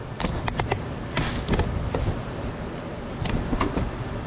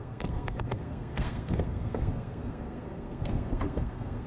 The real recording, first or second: first